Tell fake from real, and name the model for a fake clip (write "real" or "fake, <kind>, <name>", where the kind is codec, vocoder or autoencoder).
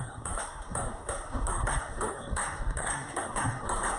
fake, codec, SNAC